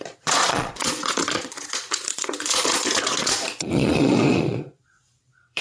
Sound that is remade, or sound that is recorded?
remade